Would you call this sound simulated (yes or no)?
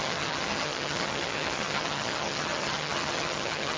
yes